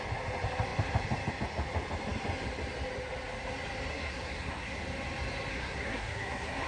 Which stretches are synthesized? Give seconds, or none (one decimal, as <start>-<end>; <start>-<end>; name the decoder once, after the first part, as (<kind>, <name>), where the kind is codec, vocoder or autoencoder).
3.9-4.8 (codec, SNAC); 5.5-6.7